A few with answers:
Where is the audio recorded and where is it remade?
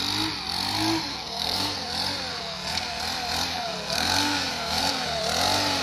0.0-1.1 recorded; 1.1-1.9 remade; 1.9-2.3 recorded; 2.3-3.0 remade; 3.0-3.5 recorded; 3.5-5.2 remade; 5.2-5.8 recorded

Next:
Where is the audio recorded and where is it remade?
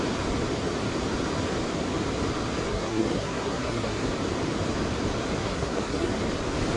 0.0-2.7 recorded; 2.7-4.1 remade; 4.1-5.4 recorded; 5.4-6.1 remade; 6.1-6.8 recorded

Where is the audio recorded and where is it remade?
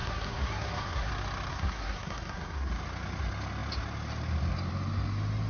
0.0-1.1 remade; 1.1-1.5 recorded; 1.5-2.7 remade; 2.7-5.5 recorded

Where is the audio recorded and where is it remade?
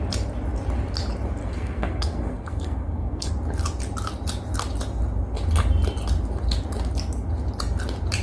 0.0-1.4 recorded; 1.4-3.3 remade; 3.3-8.2 recorded